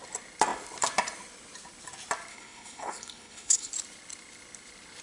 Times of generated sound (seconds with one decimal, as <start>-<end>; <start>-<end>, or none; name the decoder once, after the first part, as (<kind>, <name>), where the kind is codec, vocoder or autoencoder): 2.3-3.7 (codec, HILCodec)